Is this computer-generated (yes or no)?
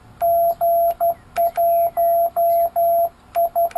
no